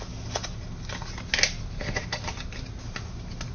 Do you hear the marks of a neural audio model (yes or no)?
no